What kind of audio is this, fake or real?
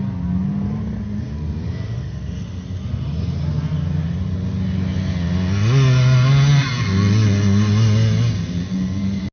real